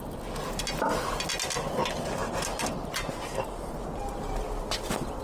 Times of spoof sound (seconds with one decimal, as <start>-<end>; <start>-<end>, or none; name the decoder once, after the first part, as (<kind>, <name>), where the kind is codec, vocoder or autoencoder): none